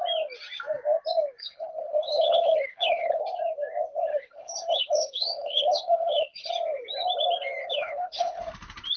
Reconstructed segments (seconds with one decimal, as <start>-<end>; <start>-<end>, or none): 1.4-3.2; 4.1-6.5; 7.6-8.4

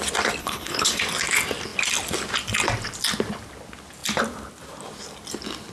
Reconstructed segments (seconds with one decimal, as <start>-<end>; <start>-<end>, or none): 0.4-1.0

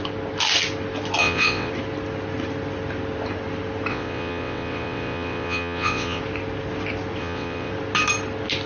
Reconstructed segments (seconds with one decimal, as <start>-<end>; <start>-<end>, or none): 1.2-1.7; 3.9-6.2; 7.2-7.7

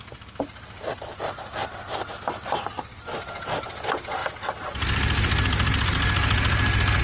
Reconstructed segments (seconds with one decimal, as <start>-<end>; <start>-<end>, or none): none

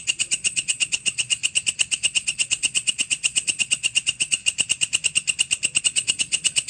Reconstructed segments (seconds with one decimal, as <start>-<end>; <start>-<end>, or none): 0.0-1.4; 1.9-4.4; 5.8-6.7

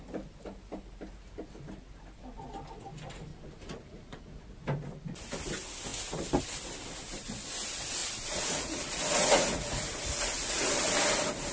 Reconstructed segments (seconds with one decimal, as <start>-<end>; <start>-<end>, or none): 3.3-4.4; 8.0-10.7